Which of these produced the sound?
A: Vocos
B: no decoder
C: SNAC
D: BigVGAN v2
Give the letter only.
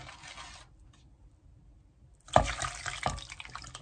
B